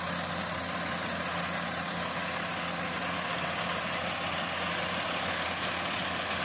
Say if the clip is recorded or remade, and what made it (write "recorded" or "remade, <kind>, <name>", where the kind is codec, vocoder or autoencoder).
recorded